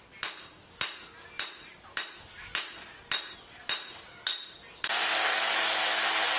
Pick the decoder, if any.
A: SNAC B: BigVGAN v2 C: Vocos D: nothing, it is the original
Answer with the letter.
D